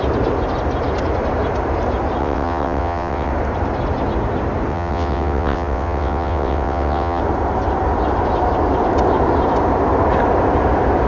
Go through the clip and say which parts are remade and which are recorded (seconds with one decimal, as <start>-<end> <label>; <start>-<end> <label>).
0.0-2.2 recorded; 2.2-3.3 remade; 3.3-4.7 recorded; 4.7-7.2 remade; 7.2-11.1 recorded